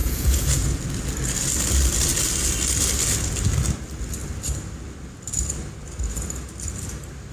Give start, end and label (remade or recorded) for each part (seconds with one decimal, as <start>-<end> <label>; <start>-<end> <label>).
0.0-0.8 remade; 0.8-7.3 recorded